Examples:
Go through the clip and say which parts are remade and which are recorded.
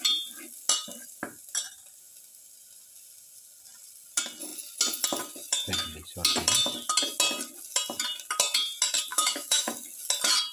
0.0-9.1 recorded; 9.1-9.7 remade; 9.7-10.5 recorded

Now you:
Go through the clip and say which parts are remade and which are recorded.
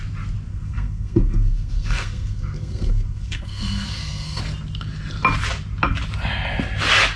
0.0-0.5 recorded; 0.5-4.4 remade; 4.4-7.2 recorded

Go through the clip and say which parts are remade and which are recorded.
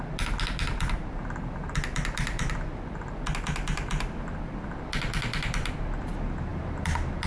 0.0-7.3 recorded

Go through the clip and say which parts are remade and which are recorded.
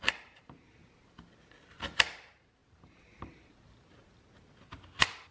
0.0-0.6 remade; 0.6-2.6 recorded; 2.6-3.3 remade; 3.3-5.3 recorded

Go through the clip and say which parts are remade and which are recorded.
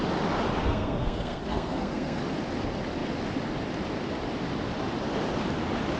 0.0-0.6 recorded; 0.6-2.2 remade; 2.2-6.0 recorded